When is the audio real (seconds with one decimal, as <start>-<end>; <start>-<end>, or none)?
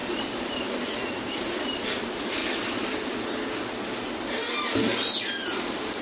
2.4-6.0